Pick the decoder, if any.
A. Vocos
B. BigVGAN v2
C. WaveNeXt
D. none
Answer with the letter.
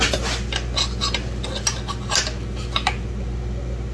D